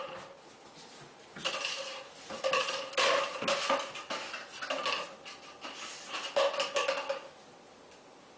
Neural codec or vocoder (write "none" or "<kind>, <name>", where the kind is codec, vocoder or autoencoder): none